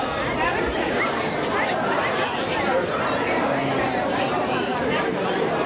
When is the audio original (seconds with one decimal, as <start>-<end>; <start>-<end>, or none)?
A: none